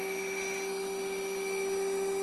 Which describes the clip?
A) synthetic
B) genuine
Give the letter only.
B